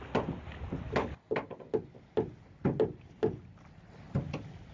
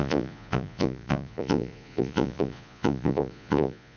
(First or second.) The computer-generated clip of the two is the second